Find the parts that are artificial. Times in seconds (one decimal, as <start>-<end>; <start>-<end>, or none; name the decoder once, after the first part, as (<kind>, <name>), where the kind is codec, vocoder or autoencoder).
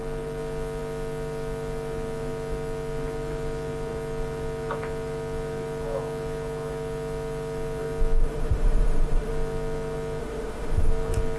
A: 8.2-9.3 (autoencoder, DAC-VAE); 10.2-10.9